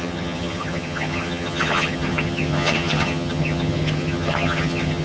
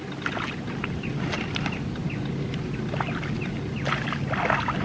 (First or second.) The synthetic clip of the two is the first